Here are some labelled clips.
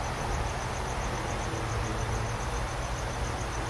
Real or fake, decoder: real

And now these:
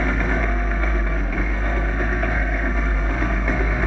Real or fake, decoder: fake, codec, SNAC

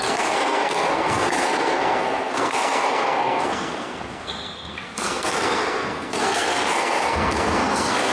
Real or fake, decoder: fake, codec, SNAC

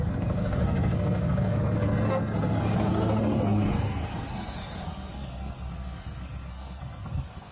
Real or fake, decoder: fake, codec, SNAC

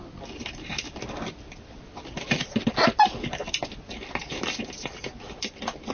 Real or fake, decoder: real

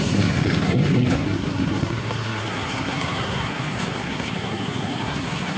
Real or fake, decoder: fake, codec, SNAC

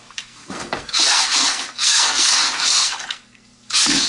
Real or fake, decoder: fake, codec, SNAC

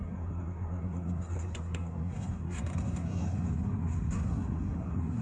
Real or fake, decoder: fake, codec, SNAC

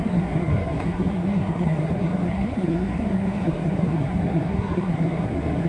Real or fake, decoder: fake, codec, SNAC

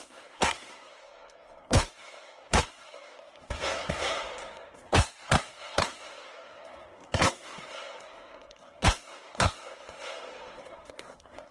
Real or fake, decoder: fake, codec, SNAC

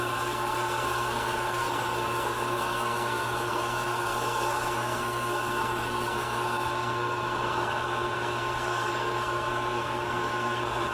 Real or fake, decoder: fake, codec, SNAC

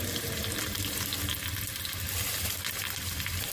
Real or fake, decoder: real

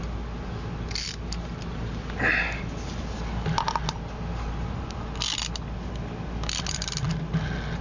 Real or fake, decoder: real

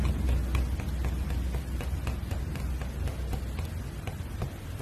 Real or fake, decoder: real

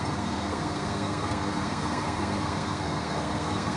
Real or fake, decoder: fake, codec, SNAC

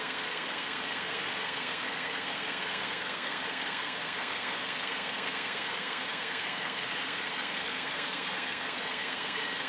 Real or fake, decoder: fake, codec, SNAC